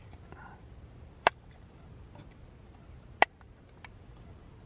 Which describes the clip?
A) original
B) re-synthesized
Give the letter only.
A